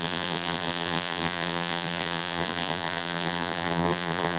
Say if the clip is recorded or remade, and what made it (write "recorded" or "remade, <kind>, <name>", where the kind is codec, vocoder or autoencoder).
remade, vocoder, BigVGAN v2